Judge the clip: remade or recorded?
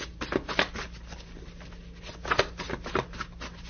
recorded